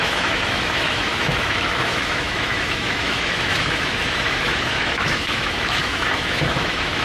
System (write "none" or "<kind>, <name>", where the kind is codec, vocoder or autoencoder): autoencoder, DAC-VAE